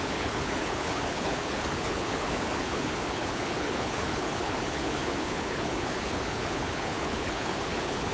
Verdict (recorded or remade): remade